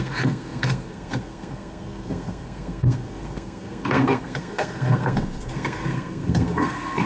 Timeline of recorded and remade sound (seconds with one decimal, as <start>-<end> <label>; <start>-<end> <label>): 0.0-7.1 remade